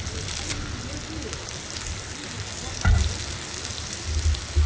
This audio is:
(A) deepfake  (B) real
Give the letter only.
B